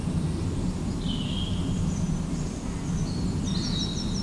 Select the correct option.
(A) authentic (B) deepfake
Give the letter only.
A